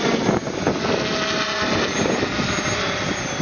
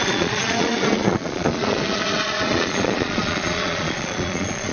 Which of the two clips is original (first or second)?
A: first